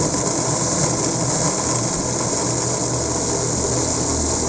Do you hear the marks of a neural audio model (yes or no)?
no